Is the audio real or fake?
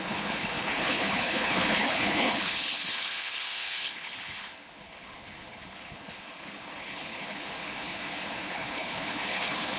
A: fake